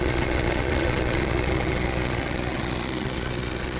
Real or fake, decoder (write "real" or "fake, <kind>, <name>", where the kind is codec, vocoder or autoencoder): fake, vocoder, Vocos